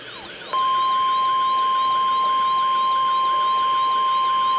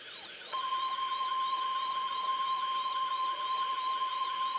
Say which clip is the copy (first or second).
second